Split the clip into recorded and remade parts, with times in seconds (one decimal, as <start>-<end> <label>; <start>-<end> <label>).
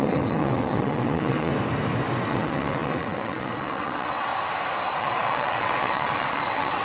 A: 0.0-1.5 remade; 1.5-2.3 recorded; 2.3-4.3 remade; 4.3-5.0 recorded; 5.0-6.8 remade